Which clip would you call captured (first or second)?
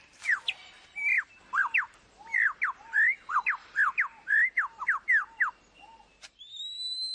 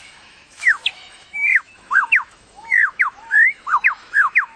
first